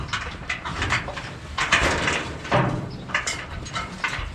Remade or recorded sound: remade